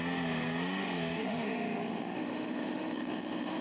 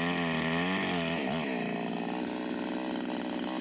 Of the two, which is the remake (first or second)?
first